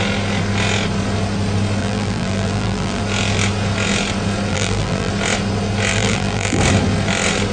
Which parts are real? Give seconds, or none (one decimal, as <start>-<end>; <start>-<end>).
0.0-1.8; 3.0-4.5; 5.1-5.9; 6.6-7.5